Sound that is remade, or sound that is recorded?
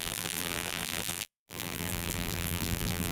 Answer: remade